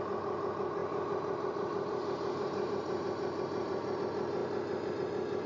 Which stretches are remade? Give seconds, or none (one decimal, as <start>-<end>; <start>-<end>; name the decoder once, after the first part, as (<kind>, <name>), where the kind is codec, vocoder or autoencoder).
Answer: 0.8-4.0 (vocoder, BigVGAN v2)